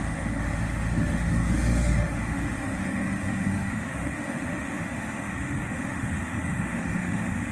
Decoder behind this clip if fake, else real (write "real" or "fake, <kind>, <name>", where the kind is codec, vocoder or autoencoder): fake, autoencoder, DAC-VAE